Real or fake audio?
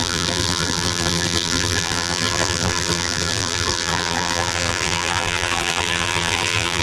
fake